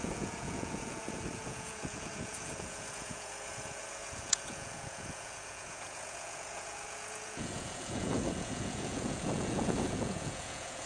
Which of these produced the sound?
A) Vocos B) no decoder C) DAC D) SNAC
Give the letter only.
A